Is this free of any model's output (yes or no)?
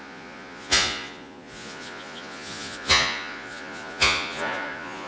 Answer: no